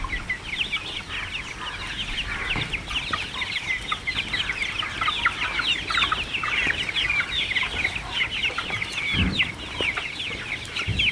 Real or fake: real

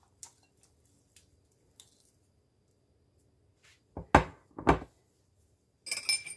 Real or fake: real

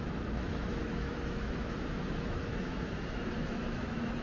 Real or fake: fake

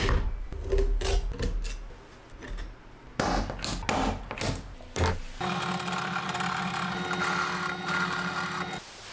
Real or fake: real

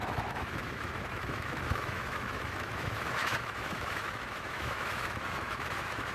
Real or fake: fake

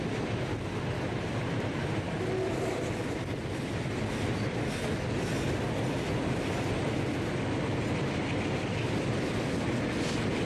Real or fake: real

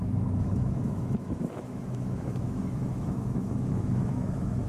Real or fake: fake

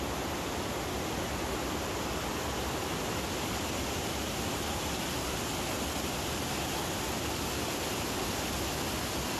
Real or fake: real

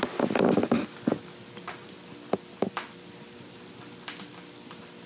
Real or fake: real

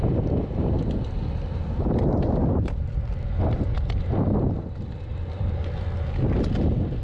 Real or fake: real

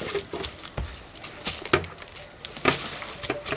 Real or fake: real